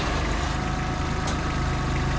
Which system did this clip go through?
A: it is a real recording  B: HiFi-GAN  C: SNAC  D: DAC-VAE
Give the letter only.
A